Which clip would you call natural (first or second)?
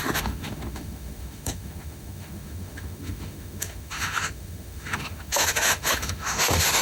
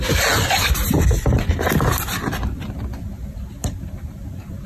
second